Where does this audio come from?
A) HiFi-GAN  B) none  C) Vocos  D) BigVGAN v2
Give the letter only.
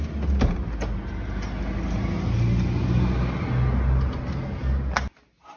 B